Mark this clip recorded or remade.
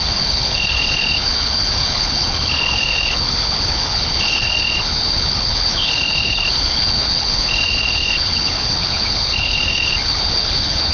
remade